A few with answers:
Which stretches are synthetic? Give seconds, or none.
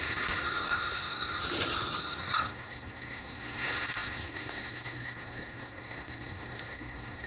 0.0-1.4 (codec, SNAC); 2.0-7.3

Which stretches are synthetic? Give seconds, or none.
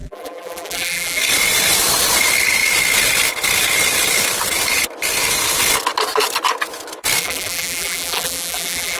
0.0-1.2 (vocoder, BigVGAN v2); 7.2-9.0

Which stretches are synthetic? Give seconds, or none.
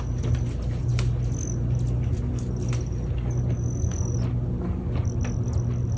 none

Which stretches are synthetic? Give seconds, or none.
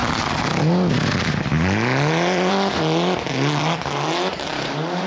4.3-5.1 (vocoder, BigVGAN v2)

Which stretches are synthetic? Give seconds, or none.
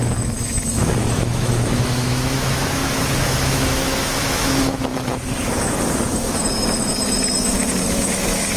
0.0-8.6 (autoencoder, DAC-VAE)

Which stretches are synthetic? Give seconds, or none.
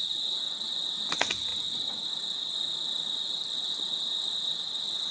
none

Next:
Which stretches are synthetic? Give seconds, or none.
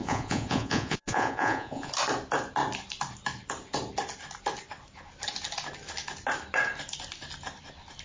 0.0-1.9 (vocoder, Vocos)